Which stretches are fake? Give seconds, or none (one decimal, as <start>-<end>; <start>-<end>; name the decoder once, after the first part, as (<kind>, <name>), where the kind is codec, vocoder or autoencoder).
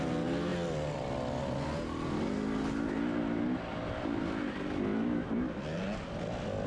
none